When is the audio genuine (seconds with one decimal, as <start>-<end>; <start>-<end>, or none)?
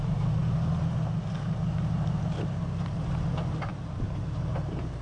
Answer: 0.0-5.0